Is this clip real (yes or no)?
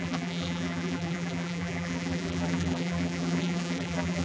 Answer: no